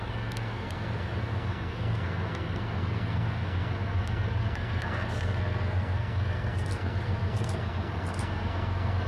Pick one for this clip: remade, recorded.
remade